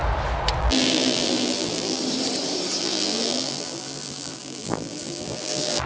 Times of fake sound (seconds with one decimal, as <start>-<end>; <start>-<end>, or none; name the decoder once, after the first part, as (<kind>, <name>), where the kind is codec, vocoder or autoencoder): 0.6-2.0 (vocoder, BigVGAN v2); 2.8-5.9